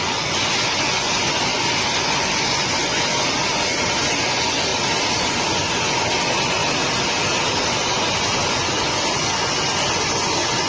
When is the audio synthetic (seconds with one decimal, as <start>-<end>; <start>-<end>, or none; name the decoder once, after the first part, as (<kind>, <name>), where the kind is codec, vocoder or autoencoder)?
0.0-4.7 (vocoder, Vocos); 5.2-6.6; 7.7-10.7